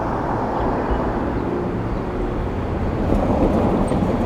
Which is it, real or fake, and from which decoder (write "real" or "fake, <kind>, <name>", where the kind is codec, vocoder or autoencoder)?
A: real